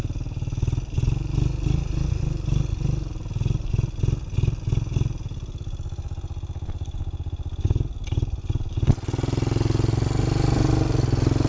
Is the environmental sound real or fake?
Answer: real